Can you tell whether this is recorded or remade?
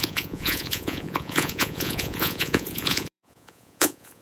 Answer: remade